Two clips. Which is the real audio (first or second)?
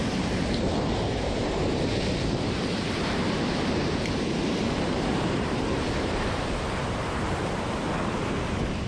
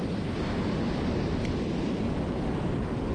second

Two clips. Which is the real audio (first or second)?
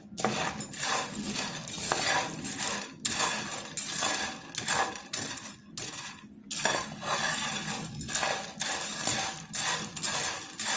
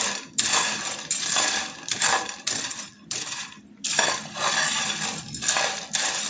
first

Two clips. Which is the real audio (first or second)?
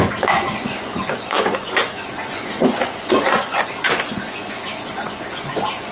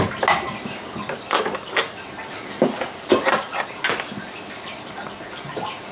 second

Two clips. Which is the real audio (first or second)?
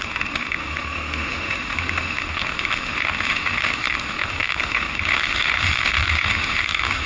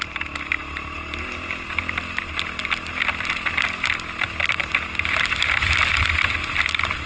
second